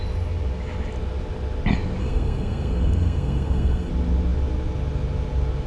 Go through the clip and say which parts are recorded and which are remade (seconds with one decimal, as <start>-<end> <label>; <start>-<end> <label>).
0.0-2.0 recorded; 2.0-3.9 remade; 3.9-5.7 recorded